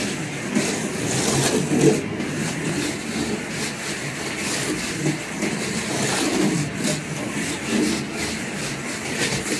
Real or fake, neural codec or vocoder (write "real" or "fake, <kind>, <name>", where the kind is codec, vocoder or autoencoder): real